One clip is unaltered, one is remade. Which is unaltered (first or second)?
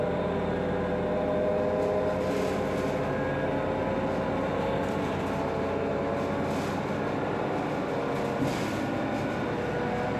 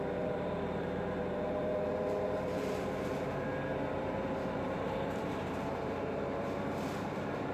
first